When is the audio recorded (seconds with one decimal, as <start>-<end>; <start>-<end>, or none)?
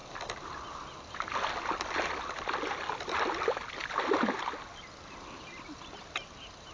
0.0-6.7